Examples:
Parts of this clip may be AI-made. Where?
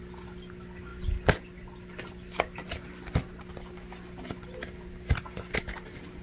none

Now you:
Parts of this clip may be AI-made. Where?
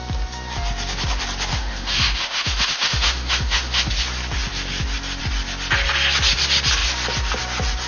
1.5-3.9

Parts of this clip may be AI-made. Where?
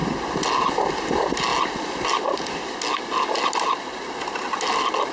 none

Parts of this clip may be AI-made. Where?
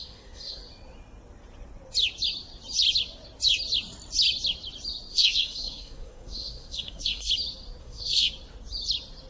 0.0-0.6; 5.1-7.3; 7.8-8.3